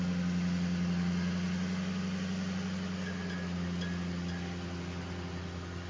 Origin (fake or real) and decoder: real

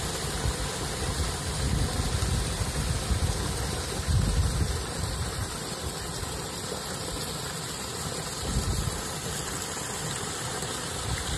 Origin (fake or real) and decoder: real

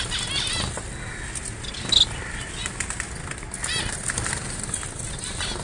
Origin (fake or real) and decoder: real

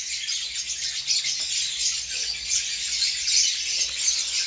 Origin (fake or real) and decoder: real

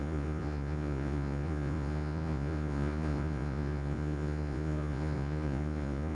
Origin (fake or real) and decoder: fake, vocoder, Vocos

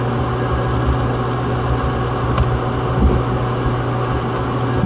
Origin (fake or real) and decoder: real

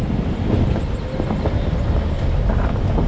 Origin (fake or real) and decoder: real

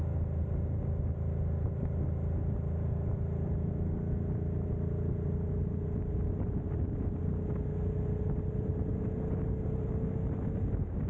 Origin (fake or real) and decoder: real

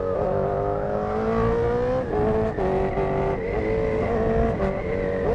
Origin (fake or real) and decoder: real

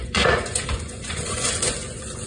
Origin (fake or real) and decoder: fake, vocoder, Vocos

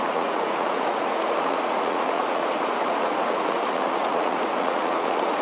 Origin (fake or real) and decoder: fake, vocoder, Vocos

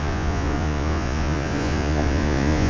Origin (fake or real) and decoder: fake, vocoder, Vocos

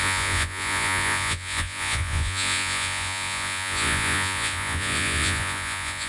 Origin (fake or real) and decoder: fake, vocoder, Vocos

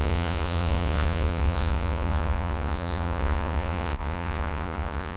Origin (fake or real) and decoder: fake, vocoder, Vocos